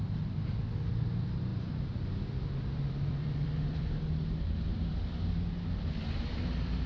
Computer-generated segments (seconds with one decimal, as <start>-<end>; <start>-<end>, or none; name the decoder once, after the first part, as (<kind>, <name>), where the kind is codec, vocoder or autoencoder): 1.5-4.0 (vocoder, BigVGAN v2); 4.7-5.3